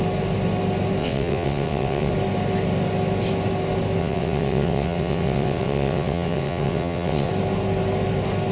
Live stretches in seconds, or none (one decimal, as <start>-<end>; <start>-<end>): 0.0-1.0; 2.1-4.0; 7.3-8.5